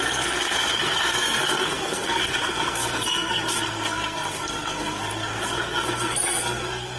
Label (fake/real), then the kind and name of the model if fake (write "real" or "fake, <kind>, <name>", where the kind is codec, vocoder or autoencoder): fake, codec, SNAC